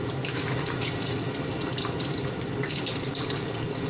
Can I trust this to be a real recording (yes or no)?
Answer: yes